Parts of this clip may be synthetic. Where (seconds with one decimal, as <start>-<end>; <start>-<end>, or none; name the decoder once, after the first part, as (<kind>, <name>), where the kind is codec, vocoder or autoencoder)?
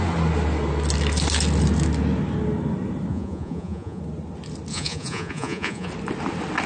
3.1-4.0 (vocoder, Vocos); 4.7-5.9